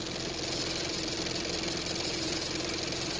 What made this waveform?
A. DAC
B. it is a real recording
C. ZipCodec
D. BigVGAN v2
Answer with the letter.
B